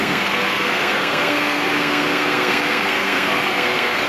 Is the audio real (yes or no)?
no